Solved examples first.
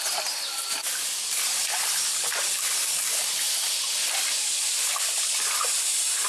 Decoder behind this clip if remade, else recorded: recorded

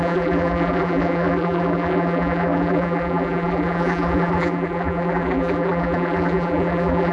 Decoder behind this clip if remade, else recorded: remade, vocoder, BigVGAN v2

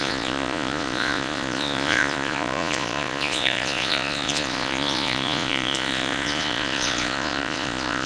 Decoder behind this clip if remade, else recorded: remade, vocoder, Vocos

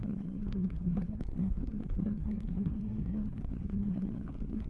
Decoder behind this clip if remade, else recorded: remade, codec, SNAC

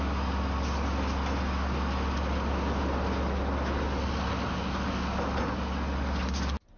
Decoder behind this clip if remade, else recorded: recorded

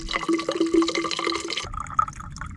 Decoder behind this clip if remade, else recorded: recorded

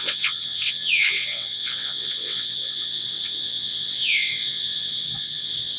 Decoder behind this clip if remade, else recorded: remade, vocoder, WaveNeXt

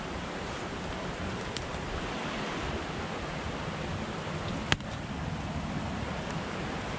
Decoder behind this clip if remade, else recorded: recorded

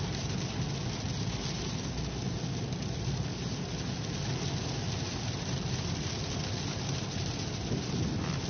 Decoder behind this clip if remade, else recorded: recorded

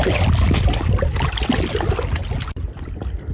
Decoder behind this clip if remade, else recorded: recorded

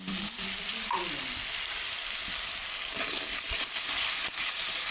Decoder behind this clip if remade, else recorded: remade, vocoder, BigVGAN v2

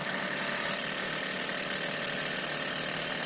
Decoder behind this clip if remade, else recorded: recorded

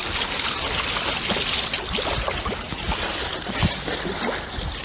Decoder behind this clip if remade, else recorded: recorded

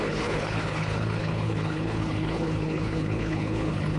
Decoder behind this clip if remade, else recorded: remade, codec, HILCodec